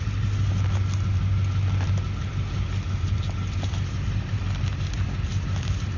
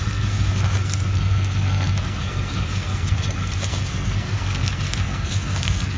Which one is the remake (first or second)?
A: second